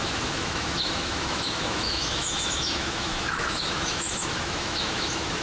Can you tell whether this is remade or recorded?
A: remade